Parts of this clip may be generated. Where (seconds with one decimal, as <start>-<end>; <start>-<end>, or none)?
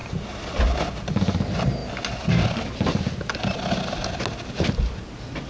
none